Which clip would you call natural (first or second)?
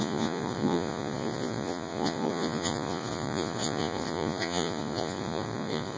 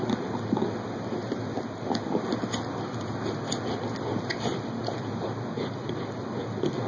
second